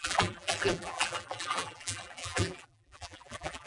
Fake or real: fake